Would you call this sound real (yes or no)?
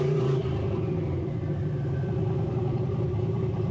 no